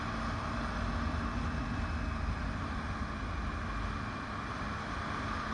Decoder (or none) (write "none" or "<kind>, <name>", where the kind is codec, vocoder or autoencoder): none